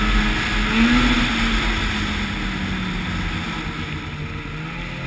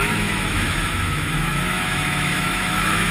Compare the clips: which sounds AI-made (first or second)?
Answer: second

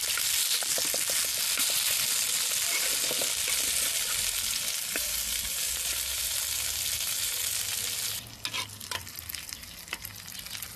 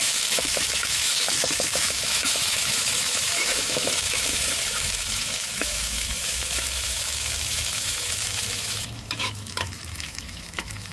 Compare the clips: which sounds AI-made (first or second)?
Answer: second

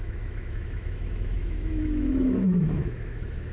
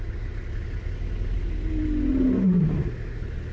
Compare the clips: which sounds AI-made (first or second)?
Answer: first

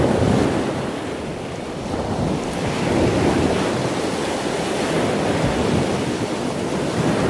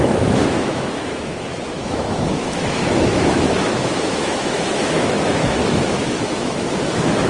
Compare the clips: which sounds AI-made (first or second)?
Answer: second